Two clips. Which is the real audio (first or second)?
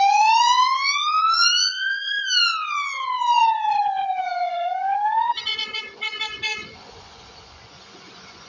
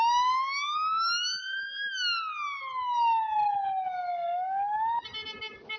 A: second